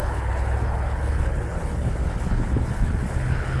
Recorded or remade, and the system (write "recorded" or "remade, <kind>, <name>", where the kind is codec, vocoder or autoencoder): remade, codec, HILCodec